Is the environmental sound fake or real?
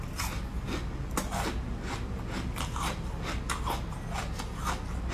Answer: real